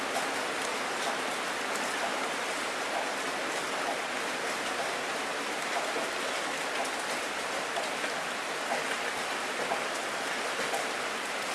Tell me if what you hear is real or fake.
real